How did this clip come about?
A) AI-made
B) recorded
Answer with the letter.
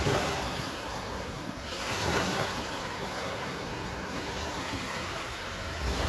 A